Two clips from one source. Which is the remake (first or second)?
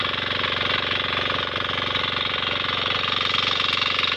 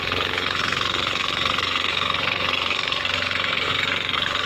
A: second